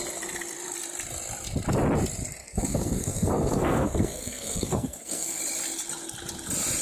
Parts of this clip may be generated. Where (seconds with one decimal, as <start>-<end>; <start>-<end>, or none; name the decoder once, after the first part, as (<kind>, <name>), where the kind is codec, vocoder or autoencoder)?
2.4-5.4 (codec, SNAC)